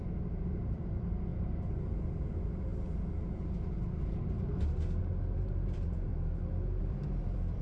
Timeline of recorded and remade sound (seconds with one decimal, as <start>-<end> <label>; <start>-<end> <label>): 0.0-1.3 remade; 1.3-2.2 recorded; 2.2-2.7 remade; 2.7-5.0 recorded; 5.0-6.1 remade; 6.1-6.8 recorded; 6.8-7.6 remade